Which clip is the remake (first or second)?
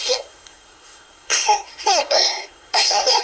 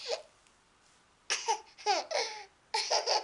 first